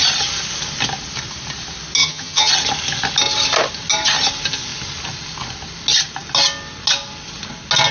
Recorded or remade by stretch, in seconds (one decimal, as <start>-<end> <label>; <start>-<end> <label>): 0.0-2.0 recorded; 2.0-2.5 remade; 2.5-7.9 recorded